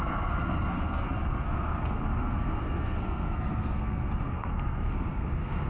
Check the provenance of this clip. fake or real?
fake